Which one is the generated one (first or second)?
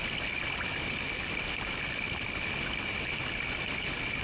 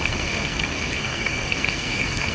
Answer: second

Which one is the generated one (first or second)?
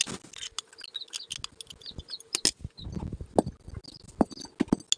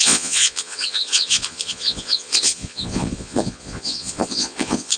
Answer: second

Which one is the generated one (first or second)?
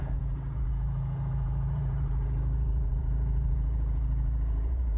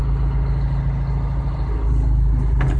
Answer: first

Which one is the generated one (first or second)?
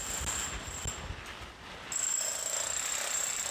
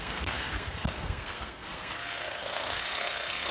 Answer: second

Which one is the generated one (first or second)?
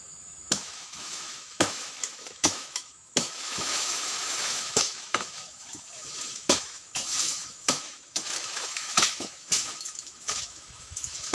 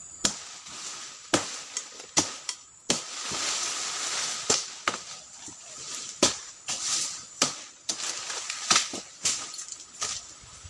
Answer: first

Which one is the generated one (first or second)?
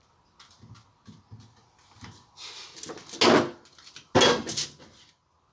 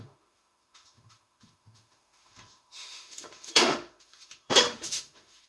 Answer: second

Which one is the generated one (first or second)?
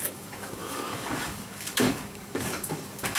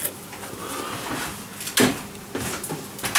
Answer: first